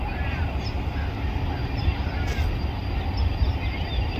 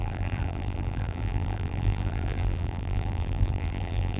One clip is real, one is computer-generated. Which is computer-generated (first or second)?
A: second